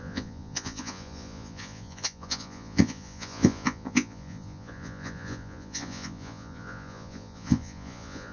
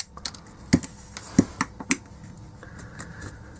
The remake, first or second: first